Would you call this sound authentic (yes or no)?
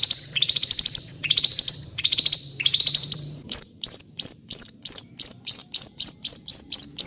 no